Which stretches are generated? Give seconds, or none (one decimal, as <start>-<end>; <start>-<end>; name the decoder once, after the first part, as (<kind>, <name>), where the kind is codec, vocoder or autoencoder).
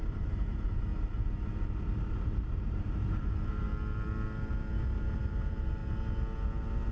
0.0-0.9 (vocoder, BigVGAN v2); 2.0-3.7; 5.2-5.8